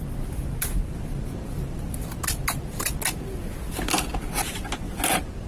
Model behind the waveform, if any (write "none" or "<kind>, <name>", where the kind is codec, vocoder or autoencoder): none